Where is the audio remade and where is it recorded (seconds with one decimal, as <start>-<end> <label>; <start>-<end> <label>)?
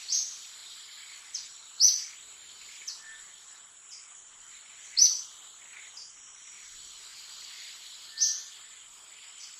0.0-9.6 remade